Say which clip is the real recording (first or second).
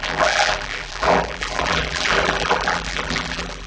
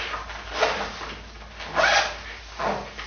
second